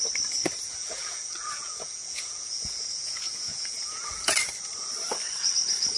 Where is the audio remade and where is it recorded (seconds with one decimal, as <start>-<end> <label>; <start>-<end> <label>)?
0.0-0.7 recorded; 0.7-4.3 remade; 4.3-6.0 recorded